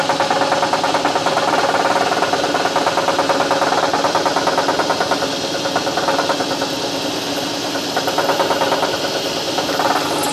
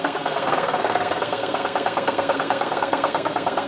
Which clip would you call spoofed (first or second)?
second